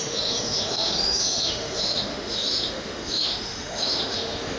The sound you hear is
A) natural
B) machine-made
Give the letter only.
B